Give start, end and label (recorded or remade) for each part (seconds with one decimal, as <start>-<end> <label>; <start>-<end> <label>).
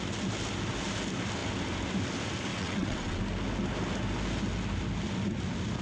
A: 0.0-2.5 recorded; 2.5-3.2 remade; 3.2-5.8 recorded